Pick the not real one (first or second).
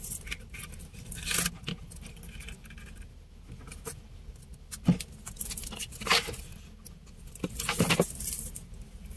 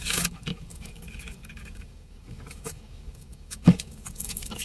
second